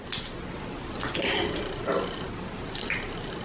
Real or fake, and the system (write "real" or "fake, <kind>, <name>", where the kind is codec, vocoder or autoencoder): real